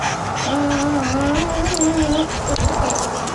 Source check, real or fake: real